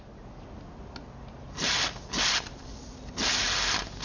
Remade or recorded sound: recorded